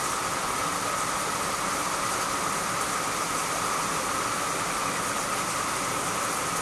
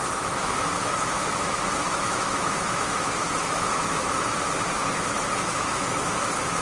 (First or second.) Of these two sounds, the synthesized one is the second